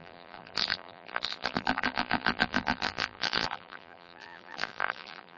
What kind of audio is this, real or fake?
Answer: fake